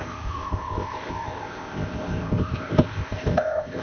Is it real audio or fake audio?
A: fake